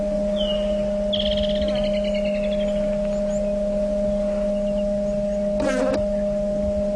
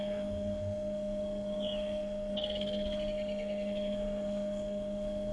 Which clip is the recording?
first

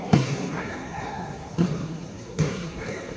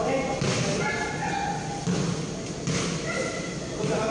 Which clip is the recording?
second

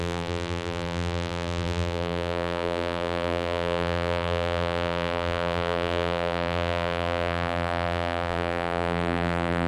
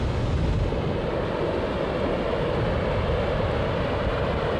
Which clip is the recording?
second